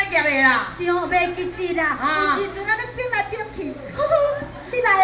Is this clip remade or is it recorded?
recorded